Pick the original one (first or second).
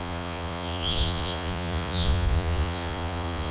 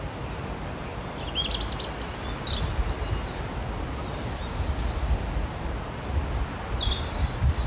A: second